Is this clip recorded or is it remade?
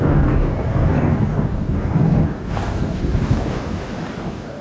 remade